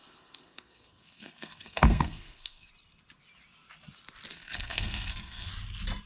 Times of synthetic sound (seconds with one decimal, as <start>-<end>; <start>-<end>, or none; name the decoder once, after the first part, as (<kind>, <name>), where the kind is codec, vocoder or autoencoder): 0.0-2.7 (codec, SNAC); 4.3-5.5